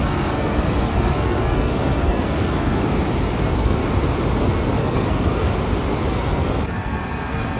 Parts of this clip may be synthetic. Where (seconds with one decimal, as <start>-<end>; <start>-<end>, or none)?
0.0-2.8; 3.4-3.8; 4.4-5.5; 6.1-7.6